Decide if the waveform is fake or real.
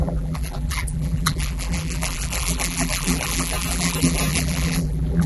fake